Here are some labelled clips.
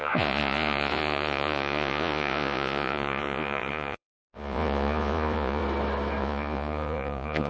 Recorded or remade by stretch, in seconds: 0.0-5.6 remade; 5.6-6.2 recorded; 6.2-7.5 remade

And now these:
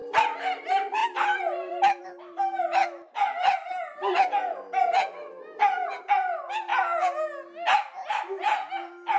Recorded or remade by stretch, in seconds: 0.0-0.6 recorded; 0.6-2.8 remade; 2.8-6.0 recorded; 6.0-6.7 remade; 6.7-8.1 recorded; 8.1-9.2 remade

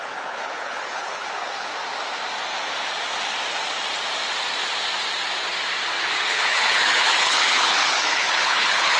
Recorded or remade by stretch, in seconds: 0.0-1.7 remade; 1.7-6.0 recorded; 6.0-9.0 remade

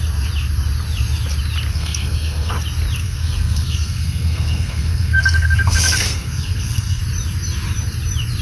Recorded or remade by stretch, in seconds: 0.0-1.7 recorded; 1.7-2.5 remade; 2.5-3.0 recorded; 3.0-7.0 remade; 7.0-8.4 recorded

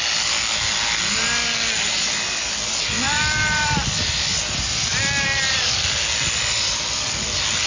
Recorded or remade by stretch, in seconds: 0.0-7.7 recorded

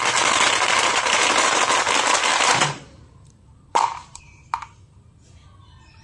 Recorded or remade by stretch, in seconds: 0.0-0.9 recorded; 0.9-1.6 remade; 1.6-2.3 recorded; 2.3-4.2 remade; 4.2-6.0 recorded

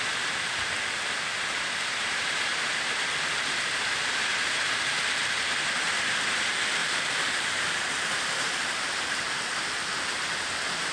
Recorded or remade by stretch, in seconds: 0.0-4.3 recorded; 4.3-5.3 remade; 5.3-6.8 recorded; 6.8-10.9 remade